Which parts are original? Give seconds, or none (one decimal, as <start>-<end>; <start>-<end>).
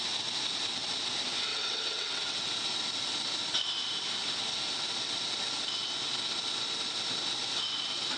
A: 0.0-1.5; 2.5-8.2